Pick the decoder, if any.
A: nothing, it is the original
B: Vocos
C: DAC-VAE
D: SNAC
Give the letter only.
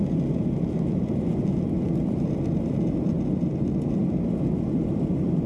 A